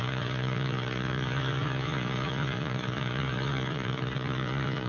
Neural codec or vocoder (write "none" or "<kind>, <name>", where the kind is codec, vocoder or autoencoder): vocoder, Vocos